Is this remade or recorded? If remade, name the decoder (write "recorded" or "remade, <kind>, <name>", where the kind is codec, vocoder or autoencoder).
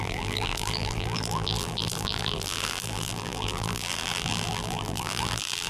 remade, vocoder, BigVGAN v2